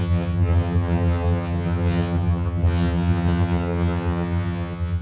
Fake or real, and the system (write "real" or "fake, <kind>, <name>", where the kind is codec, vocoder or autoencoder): fake, vocoder, HiFi-GAN